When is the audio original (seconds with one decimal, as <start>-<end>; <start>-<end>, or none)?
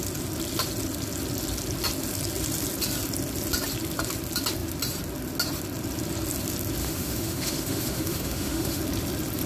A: 0.0-6.8; 8.8-9.5